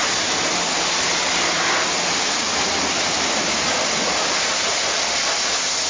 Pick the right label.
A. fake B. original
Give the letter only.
B